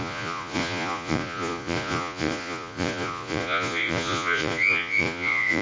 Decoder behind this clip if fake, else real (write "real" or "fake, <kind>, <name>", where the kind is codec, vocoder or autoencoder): fake, vocoder, Vocos